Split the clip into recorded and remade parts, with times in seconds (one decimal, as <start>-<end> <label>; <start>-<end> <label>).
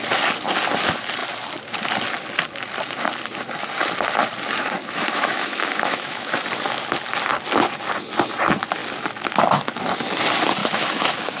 0.0-4.8 recorded; 4.8-6.4 remade; 6.4-10.6 recorded; 10.6-11.4 remade